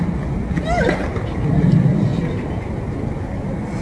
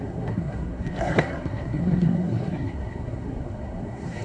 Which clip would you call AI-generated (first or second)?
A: second